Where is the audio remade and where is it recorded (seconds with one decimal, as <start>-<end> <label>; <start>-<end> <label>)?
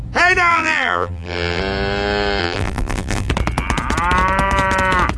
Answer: 0.0-0.5 recorded; 0.5-1.6 remade; 1.6-2.4 recorded; 2.4-3.3 remade; 3.3-5.2 recorded